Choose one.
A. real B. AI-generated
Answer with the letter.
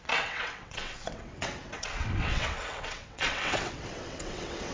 B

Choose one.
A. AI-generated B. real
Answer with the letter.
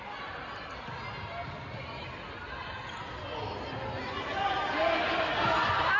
B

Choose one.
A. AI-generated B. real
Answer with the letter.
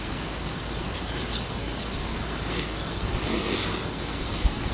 A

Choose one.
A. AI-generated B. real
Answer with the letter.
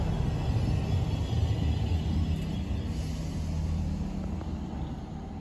B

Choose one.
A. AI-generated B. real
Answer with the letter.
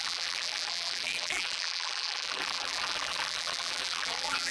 A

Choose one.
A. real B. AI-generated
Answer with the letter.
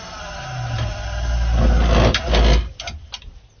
A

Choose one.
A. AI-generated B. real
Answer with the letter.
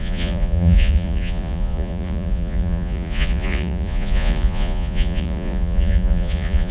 A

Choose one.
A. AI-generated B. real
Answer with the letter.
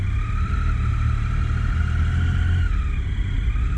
B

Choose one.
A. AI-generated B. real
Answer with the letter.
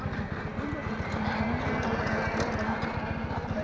B